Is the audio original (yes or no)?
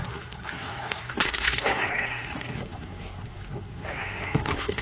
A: no